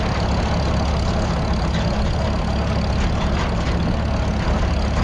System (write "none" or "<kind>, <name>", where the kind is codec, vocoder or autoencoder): none